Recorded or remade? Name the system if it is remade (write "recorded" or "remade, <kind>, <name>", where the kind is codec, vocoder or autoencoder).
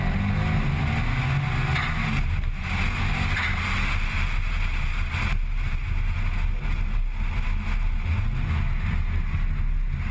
recorded